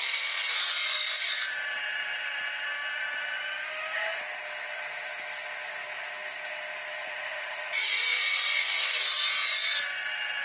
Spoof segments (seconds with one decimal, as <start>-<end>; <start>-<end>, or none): 7.0-8.9